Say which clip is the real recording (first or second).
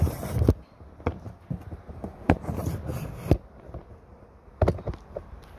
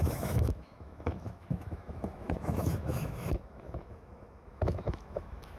first